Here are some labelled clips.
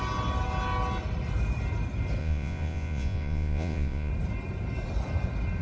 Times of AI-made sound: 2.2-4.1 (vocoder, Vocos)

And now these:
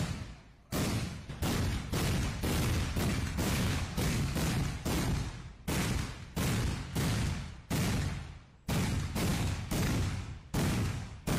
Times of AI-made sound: 3.4-4.4 (codec, DAC); 6.9-7.5; 9.3-11.4

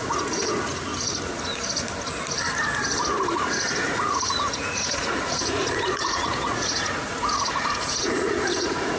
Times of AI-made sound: 0.0-0.9 (vocoder, Vocos); 3.3-9.0

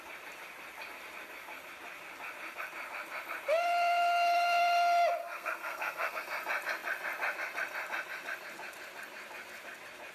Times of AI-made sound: 5.2-6.2 (codec, SNAC)

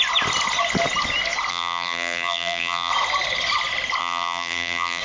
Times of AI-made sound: 1.5-2.9 (vocoder, BigVGAN v2); 4.0-5.0

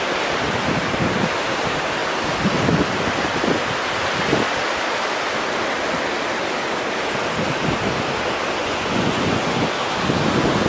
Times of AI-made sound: 8.6-9.6 (vocoder, Vocos)

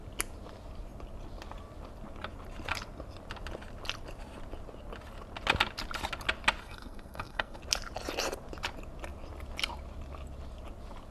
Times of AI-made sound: 6.6-7.6 (codec, SNAC)